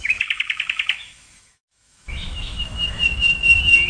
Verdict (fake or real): fake